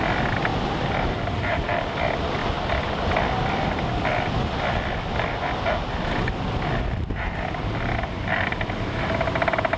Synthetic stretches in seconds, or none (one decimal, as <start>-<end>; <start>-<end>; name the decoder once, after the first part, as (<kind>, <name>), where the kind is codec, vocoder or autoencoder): 0.0-2.4 (vocoder, BigVGAN v2); 6.9-9.8